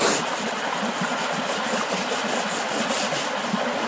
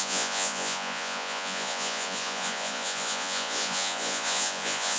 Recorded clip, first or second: first